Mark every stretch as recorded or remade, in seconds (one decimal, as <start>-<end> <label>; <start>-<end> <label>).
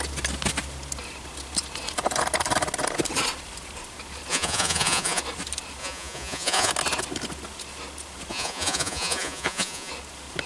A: 0.0-4.3 recorded; 4.3-5.2 remade; 5.2-5.8 recorded; 5.8-6.7 remade; 6.7-8.3 recorded; 8.3-9.9 remade; 9.9-10.5 recorded